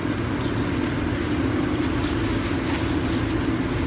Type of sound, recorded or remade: recorded